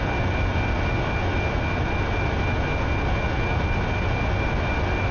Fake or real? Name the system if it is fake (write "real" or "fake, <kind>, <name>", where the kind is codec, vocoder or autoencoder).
real